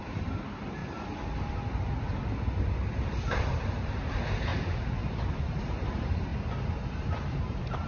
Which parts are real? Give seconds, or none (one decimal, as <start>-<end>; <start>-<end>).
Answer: 0.8-3.9; 4.5-5.4; 6.3-6.9